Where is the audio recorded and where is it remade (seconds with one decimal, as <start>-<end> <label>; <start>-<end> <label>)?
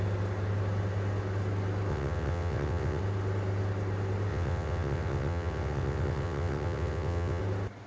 0.0-1.9 recorded; 1.9-3.0 remade; 3.0-4.3 recorded; 4.3-7.4 remade; 7.4-7.9 recorded